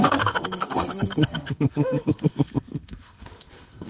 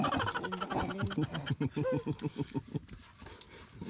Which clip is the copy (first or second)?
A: first